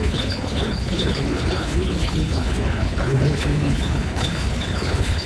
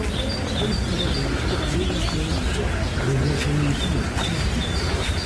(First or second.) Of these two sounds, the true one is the second